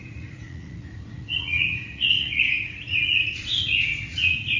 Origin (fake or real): fake